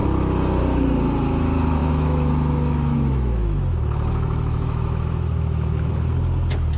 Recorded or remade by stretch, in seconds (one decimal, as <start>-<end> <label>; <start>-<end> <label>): 0.0-1.8 recorded; 1.8-5.9 remade; 5.9-6.8 recorded